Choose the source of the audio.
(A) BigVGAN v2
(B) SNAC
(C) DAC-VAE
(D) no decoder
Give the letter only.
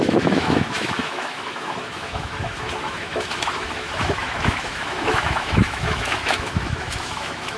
C